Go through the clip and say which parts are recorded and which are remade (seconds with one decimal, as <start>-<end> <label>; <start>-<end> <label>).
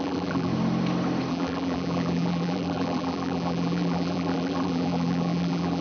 0.0-0.5 remade; 0.5-1.3 recorded; 1.3-5.8 remade